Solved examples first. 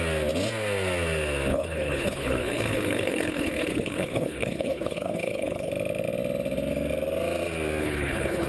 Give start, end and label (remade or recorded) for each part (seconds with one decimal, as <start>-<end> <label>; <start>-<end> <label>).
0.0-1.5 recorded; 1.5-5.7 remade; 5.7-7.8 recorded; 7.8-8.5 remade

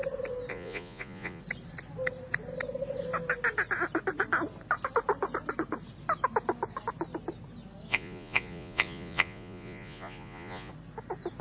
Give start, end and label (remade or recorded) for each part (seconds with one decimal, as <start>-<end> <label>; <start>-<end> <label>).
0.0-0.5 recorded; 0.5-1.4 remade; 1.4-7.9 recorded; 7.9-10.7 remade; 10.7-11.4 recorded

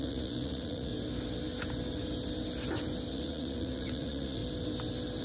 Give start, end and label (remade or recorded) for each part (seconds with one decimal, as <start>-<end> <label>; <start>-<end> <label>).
0.0-0.9 remade; 0.9-3.1 recorded; 3.1-4.4 remade; 4.4-5.2 recorded

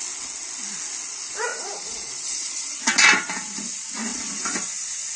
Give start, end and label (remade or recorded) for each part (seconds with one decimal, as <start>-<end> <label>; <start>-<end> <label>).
0.0-1.5 recorded; 1.5-2.8 remade; 2.8-5.2 recorded

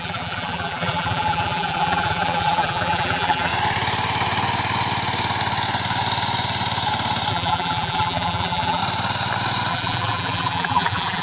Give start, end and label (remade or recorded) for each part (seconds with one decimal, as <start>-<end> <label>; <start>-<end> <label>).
0.0-3.5 remade; 3.5-7.3 recorded; 7.3-8.8 remade; 8.8-9.7 recorded; 9.7-11.2 remade

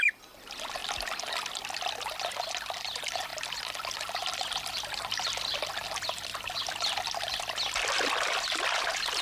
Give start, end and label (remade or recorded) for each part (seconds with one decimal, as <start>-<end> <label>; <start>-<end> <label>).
0.0-9.2 recorded

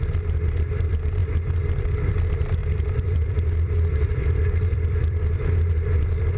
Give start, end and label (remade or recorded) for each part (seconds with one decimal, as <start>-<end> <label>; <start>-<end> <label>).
0.0-2.6 recorded; 2.6-5.2 remade; 5.2-6.4 recorded